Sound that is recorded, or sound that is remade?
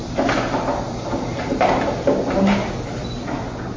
recorded